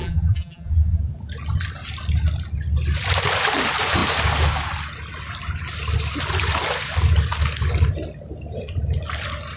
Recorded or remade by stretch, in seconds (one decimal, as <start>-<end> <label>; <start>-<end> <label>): 0.0-1.0 remade; 1.0-9.6 recorded